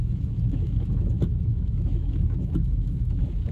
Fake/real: fake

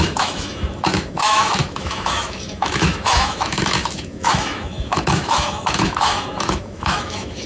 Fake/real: fake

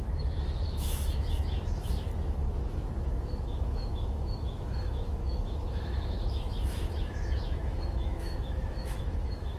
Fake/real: fake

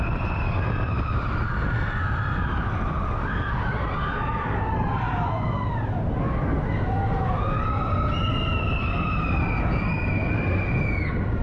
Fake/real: real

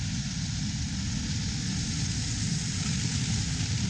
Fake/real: real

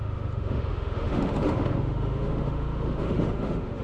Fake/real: fake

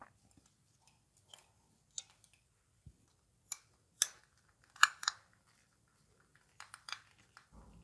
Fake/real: real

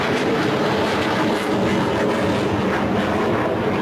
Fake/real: real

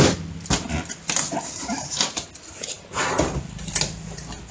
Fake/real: real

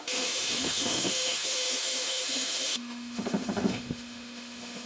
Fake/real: fake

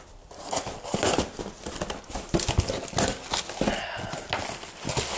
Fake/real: real